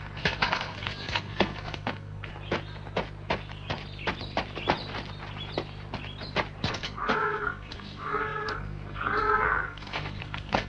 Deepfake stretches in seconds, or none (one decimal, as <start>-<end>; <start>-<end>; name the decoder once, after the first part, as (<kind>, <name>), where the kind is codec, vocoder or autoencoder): 0.0-2.3 (codec, SNAC); 6.7-10.7